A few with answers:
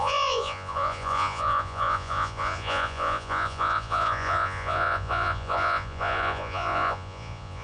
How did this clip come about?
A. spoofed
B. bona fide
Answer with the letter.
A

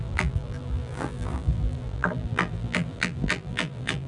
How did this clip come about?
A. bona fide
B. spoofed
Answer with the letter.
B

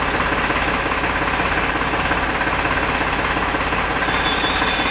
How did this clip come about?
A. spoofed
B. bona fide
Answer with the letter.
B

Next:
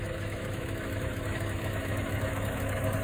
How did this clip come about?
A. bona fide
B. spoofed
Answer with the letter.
B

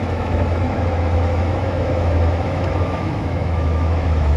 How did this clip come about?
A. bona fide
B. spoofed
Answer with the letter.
B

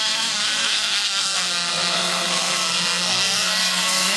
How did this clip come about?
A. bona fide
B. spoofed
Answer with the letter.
B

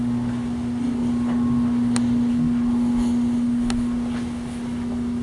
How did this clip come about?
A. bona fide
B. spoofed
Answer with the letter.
A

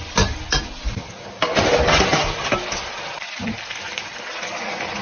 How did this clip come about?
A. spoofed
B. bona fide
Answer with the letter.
B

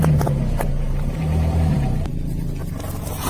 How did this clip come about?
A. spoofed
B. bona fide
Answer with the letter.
A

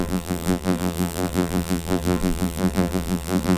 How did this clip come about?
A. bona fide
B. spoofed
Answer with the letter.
B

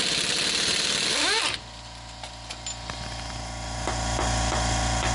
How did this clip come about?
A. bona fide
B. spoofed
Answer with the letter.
A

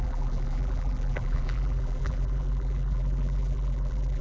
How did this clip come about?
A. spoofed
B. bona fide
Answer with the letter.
A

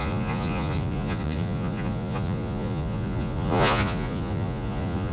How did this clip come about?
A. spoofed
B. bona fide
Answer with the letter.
A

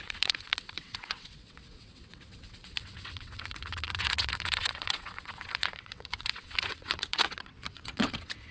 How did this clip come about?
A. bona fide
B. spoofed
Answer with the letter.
B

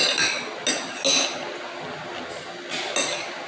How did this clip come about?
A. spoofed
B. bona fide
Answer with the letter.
B